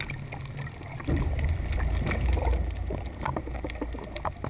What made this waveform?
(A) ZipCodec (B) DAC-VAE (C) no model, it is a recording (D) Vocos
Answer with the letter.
C